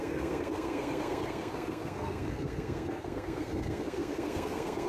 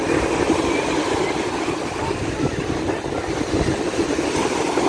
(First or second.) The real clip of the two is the second